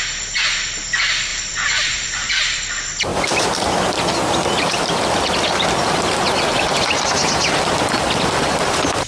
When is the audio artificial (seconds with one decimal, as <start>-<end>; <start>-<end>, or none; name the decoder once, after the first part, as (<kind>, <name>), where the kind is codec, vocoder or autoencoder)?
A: 1.3-2.3 (vocoder, BigVGAN v2)